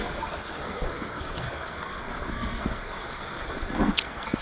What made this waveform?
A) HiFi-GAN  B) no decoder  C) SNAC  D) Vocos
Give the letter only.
C